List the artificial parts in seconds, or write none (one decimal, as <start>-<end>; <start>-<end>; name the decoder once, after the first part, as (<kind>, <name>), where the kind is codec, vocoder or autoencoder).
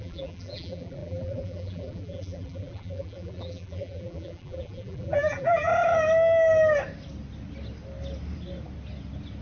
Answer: 0.0-5.7 (vocoder, BigVGAN v2)